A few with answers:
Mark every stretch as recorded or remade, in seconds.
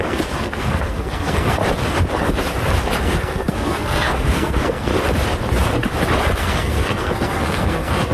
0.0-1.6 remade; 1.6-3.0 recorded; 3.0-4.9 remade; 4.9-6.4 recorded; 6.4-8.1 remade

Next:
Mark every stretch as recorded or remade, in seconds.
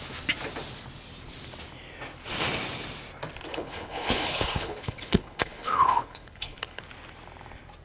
0.0-3.5 recorded; 3.5-6.8 remade; 6.8-7.8 recorded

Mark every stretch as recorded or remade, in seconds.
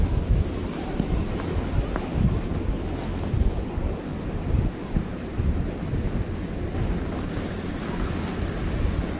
0.0-9.2 recorded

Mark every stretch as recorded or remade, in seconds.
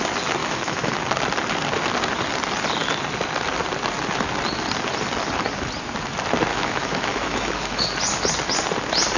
0.0-0.4 recorded; 0.4-0.9 remade; 0.9-6.5 recorded; 6.5-7.8 remade; 7.8-9.2 recorded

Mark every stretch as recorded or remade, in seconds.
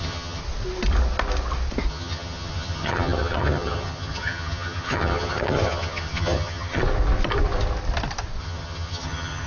0.0-0.4 remade; 0.4-1.9 recorded; 1.9-6.8 remade; 6.8-8.4 recorded; 8.4-9.5 remade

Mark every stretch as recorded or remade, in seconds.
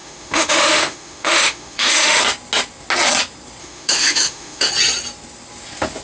0.0-2.2 remade; 2.2-3.6 recorded; 3.6-4.7 remade; 4.7-6.0 recorded